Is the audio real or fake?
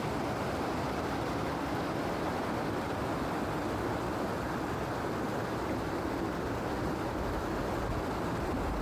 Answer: real